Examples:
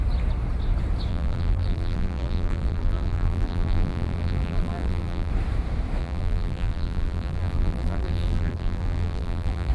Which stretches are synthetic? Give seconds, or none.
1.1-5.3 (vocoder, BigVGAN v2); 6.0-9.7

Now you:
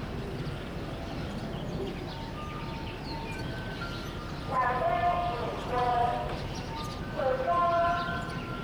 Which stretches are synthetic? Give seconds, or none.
none

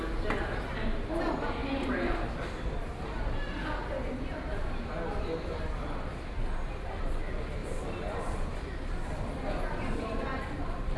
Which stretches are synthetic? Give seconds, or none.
1.6-3.5 (vocoder, BigVGAN v2); 7.6-9.5

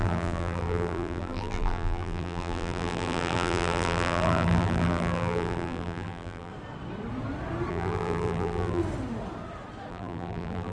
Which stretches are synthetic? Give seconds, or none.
0.0-6.5 (vocoder, BigVGAN v2); 7.7-8.8; 9.9-10.7